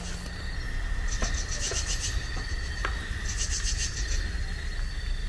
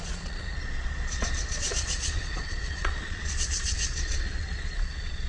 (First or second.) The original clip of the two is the first